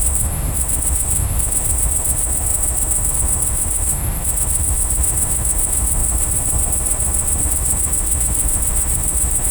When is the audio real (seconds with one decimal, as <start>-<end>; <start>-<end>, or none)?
none